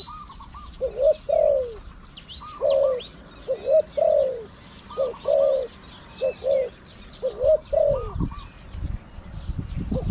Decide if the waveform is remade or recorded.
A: recorded